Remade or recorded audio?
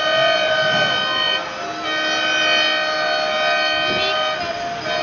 recorded